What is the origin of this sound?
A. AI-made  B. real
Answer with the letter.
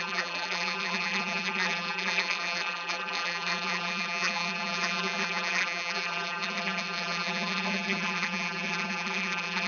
A